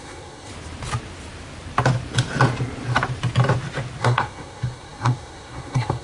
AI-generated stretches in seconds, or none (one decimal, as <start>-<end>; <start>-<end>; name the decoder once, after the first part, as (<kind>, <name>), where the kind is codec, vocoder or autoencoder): 0.0-0.5 (codec, SNAC); 4.0-6.0